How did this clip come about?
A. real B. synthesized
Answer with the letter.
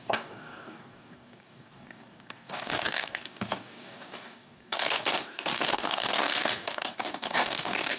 B